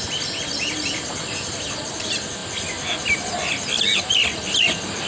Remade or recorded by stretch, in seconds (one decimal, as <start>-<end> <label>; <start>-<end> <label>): 0.0-5.1 recorded